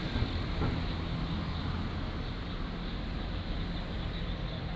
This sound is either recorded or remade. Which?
recorded